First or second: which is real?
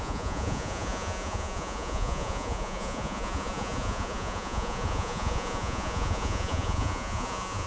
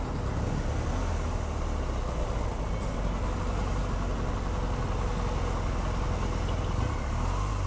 second